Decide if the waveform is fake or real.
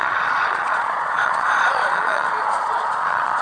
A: fake